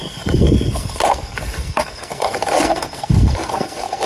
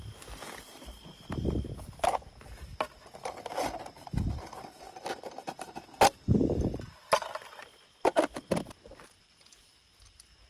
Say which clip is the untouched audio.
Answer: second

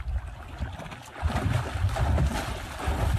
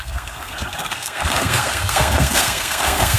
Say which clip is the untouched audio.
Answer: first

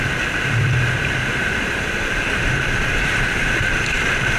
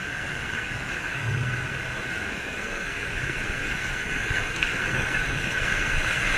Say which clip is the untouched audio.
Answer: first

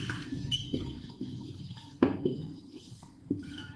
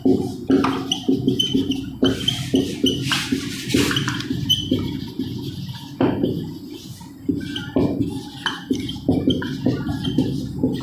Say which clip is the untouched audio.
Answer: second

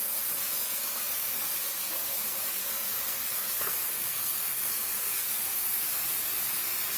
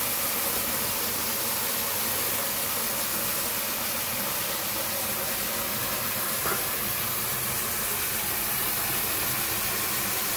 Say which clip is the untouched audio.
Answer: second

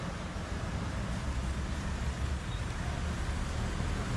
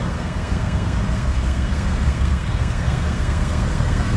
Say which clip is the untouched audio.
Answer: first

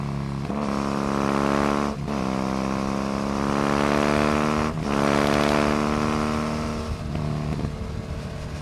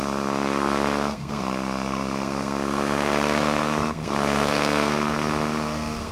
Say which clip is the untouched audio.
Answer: first